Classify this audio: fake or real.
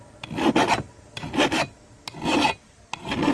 real